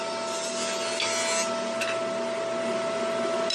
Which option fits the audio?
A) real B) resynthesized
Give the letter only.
A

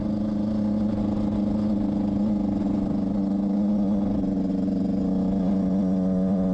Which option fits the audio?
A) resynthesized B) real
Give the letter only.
B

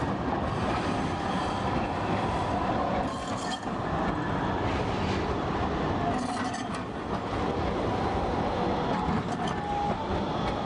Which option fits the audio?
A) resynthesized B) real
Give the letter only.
B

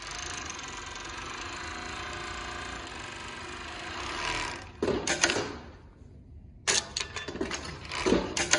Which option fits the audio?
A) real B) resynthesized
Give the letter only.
A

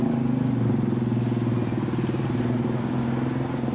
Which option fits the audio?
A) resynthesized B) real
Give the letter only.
B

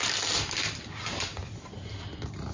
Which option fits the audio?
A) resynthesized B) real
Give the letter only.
B